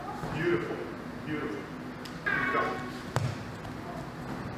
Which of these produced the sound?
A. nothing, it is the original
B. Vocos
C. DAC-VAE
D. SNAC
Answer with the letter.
A